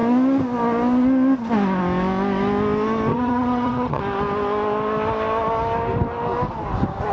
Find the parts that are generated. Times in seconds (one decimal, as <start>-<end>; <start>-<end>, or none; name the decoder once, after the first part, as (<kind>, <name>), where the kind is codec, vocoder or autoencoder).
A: 3.1-4.0 (vocoder, HiFi-GAN)